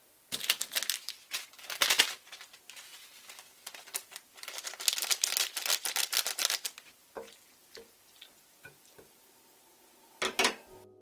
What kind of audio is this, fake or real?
real